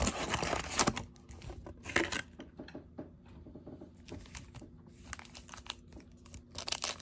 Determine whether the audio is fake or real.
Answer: real